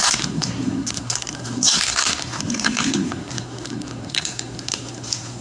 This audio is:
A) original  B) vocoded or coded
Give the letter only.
B